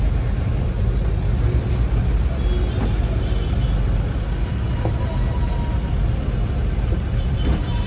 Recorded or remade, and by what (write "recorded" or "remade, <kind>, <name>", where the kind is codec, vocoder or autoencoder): recorded